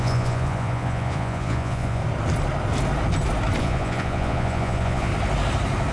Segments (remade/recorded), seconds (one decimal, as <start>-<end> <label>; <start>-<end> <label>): 0.0-2.0 remade; 2.0-3.6 recorded; 3.6-5.1 remade; 5.1-5.9 recorded